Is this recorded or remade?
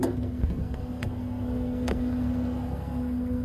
remade